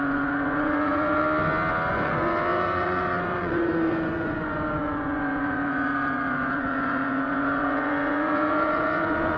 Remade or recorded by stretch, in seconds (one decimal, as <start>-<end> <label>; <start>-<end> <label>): 0.0-1.2 remade; 1.2-1.9 recorded; 1.9-9.4 remade